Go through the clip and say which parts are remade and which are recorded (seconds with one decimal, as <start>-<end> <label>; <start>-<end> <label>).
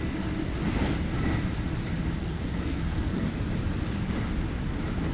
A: 0.0-2.2 recorded; 2.2-3.3 remade; 3.3-5.1 recorded